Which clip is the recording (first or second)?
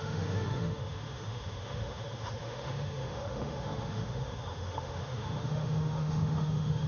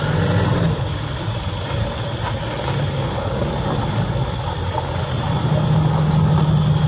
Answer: second